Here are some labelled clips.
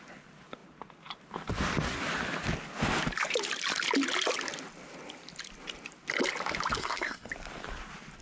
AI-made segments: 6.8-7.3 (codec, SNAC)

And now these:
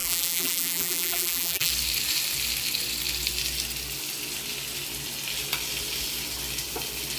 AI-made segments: 0.0-1.7 (vocoder, BigVGAN v2)

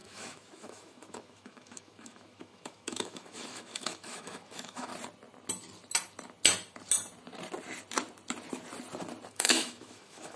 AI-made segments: 0.0-4.9 (autoencoder, DAC-VAE); 9.3-10.4

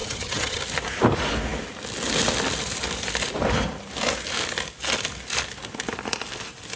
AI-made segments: 0.0-0.6 (vocoder, HiFi-GAN)

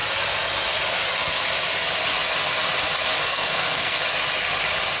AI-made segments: 3.1-4.0 (codec, SNAC)

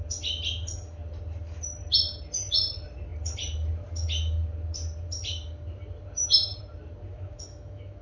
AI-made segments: 7.1-8.0 (autoencoder, DAC-VAE)

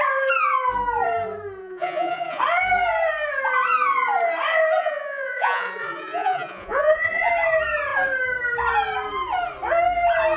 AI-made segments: 1.6-2.4 (vocoder, Vocos); 4.8-7.3

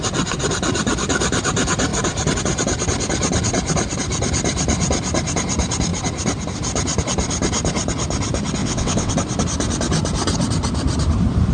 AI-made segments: 8.6-9.1 (vocoder, WaveNeXt)